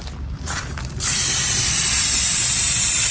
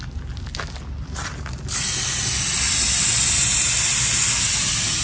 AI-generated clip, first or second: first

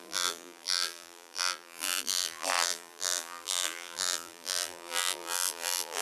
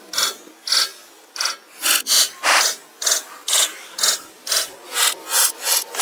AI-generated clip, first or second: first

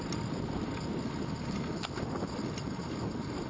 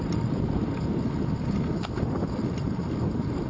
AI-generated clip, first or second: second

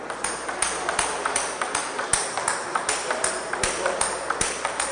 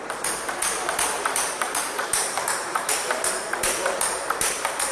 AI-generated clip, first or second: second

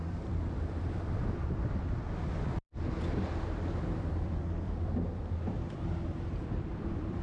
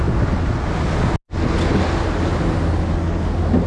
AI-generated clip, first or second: first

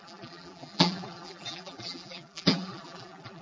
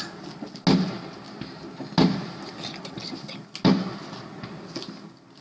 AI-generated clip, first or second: first